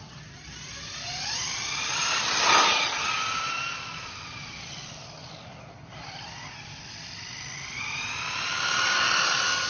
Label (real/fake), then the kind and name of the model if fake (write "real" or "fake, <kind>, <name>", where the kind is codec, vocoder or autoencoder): real